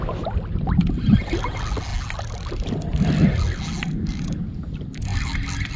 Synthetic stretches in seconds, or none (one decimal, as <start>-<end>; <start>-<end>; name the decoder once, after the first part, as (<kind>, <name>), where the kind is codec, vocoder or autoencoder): none